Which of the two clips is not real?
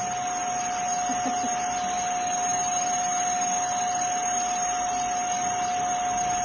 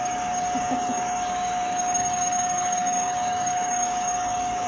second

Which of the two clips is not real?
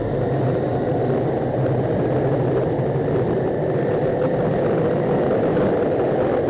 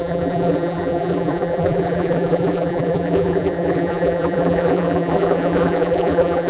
second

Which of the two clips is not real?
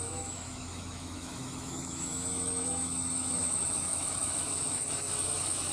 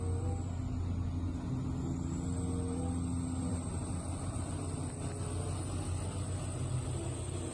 first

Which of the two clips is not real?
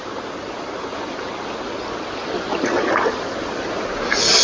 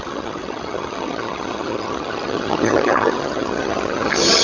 second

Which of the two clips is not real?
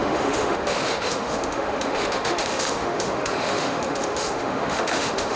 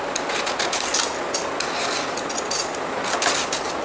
first